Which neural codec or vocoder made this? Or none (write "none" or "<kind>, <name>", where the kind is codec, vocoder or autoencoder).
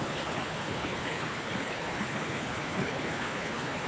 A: codec, HILCodec